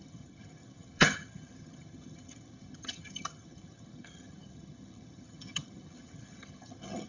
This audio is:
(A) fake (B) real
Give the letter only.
A